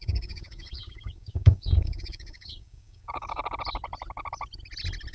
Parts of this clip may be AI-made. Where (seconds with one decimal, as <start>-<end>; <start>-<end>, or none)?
0.0-3.4